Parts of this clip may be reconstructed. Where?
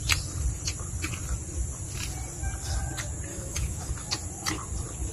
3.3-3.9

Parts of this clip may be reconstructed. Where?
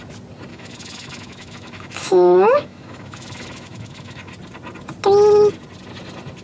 0.5-4.3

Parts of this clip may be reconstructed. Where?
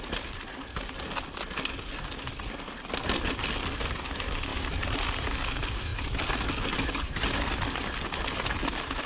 4.5-5.1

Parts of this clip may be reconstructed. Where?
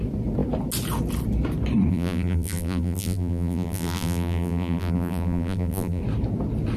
1.9-6.0